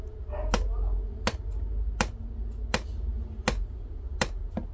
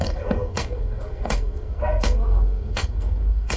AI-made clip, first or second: second